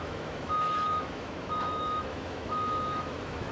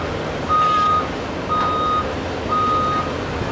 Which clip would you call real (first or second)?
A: second